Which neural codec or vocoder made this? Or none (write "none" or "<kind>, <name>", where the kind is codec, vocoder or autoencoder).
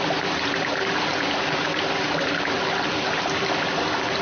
none